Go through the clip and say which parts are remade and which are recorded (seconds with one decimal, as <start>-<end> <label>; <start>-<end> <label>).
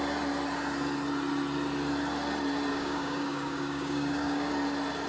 0.0-2.7 recorded; 2.7-4.5 remade; 4.5-5.1 recorded